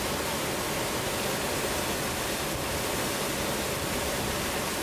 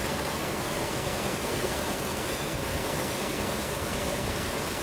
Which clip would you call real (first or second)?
first